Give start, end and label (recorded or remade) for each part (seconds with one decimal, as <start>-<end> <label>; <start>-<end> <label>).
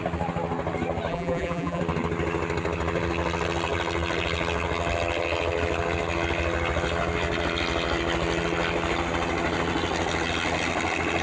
0.0-1.1 recorded; 1.1-1.8 remade; 1.8-11.2 recorded